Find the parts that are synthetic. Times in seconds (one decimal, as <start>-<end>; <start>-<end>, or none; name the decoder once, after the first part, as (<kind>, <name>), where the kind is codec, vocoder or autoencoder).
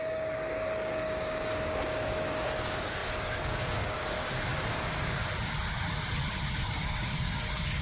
0.0-5.2 (codec, DAC); 6.8-7.8